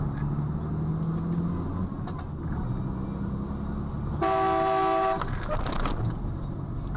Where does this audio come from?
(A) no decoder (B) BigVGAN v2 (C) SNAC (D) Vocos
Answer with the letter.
A